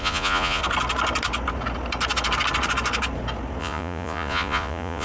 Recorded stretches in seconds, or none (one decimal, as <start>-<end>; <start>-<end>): 0.6-3.6